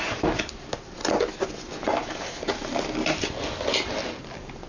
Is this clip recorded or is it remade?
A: recorded